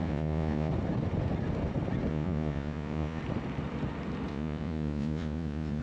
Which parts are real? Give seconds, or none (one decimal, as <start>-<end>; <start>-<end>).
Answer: 0.7-2.1; 3.2-4.3